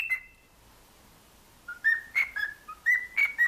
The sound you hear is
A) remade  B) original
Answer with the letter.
B